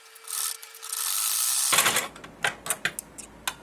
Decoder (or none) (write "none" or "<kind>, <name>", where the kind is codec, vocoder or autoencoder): none